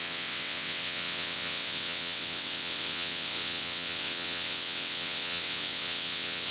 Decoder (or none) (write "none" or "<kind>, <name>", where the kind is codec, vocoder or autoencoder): vocoder, WaveNeXt